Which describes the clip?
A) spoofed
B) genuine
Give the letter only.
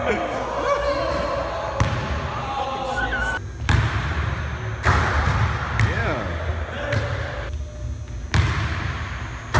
B